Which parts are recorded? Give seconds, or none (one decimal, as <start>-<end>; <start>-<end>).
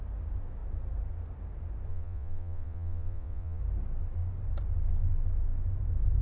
0.0-1.9; 3.6-6.2